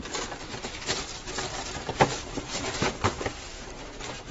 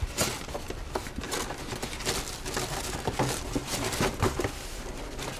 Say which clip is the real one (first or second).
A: second